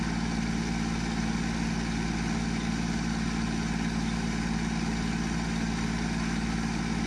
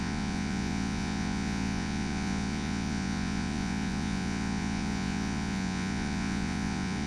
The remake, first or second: second